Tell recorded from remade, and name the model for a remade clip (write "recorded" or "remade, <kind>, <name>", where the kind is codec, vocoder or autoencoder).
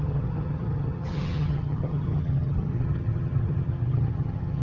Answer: remade, vocoder, HiFi-GAN